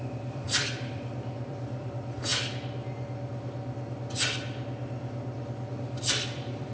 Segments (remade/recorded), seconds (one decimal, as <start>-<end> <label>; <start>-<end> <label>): 0.0-2.3 remade; 2.3-5.8 recorded; 5.8-6.7 remade